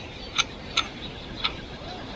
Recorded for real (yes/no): yes